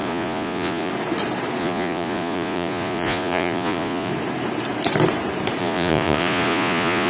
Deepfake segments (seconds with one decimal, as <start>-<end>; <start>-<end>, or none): 0.0-0.9; 1.6-4.1; 5.6-7.1